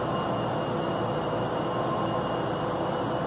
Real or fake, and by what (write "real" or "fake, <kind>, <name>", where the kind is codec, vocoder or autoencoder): real